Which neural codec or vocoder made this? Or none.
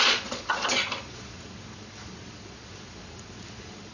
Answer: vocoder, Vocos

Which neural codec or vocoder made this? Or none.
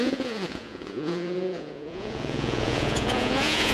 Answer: vocoder, Vocos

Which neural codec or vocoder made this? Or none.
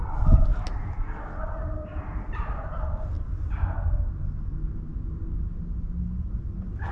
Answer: none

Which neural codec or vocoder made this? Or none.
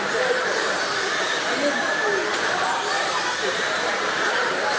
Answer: vocoder, BigVGAN v2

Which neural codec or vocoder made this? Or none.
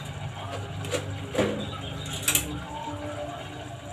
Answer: none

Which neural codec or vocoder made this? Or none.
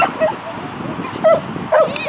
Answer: none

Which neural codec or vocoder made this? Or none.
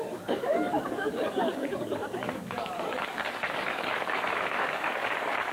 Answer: codec, DAC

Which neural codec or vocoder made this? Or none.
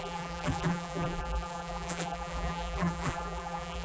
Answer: vocoder, BigVGAN v2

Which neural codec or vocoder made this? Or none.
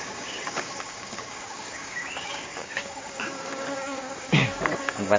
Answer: codec, DAC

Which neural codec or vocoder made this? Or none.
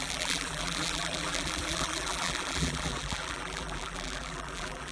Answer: vocoder, BigVGAN v2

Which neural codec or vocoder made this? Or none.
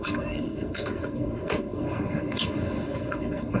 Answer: codec, SNAC